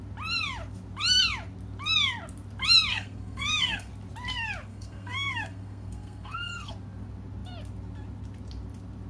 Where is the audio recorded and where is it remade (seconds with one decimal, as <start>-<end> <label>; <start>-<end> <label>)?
0.0-2.9 recorded; 2.9-3.9 remade; 3.9-4.7 recorded; 4.7-6.7 remade; 6.7-9.1 recorded